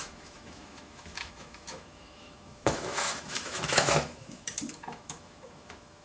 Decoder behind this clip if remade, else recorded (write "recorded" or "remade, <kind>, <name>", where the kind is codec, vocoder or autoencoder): remade, autoencoder, DAC-VAE